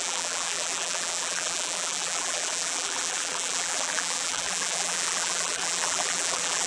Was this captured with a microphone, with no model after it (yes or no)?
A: no